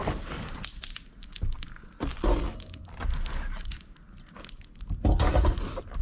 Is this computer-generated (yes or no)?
no